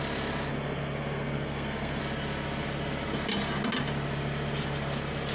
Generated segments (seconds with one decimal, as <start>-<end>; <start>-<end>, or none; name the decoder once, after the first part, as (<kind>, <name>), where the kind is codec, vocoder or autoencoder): 0.5-2.0 (codec, SNAC)